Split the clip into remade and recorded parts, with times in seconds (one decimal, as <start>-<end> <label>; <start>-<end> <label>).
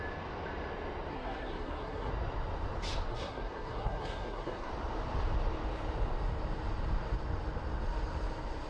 0.0-1.1 recorded; 1.1-2.1 remade; 2.1-3.1 recorded; 3.1-4.7 remade; 4.7-8.7 recorded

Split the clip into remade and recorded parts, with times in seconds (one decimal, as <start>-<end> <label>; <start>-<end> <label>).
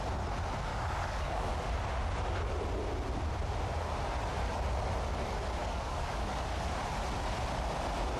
0.0-0.7 recorded; 0.7-1.8 remade; 1.8-5.6 recorded; 5.6-6.7 remade; 6.7-8.2 recorded